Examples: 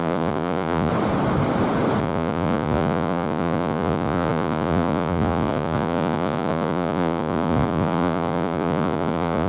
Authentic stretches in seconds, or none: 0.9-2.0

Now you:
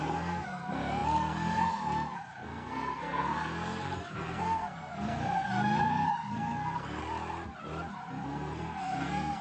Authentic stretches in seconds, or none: 7.0-8.1

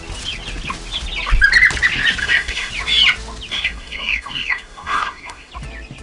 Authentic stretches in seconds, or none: 0.0-2.2; 2.7-3.5; 5.5-6.0

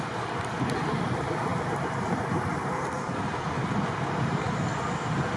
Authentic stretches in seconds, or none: 0.0-5.4

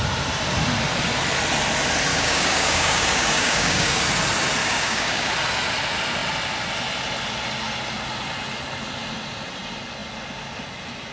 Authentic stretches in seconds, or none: 0.0-2.1; 4.0-4.6; 5.3-11.1

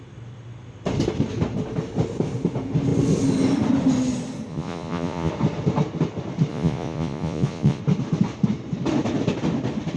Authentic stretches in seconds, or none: 0.0-4.5; 5.3-6.5; 7.8-10.0

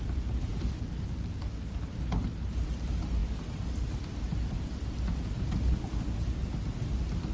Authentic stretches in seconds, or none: 0.0-7.3

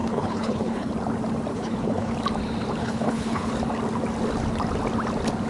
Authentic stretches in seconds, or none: 0.9-1.5; 2.1-2.8; 3.5-5.5